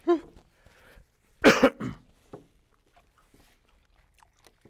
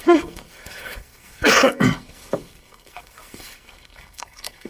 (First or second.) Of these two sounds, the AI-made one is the second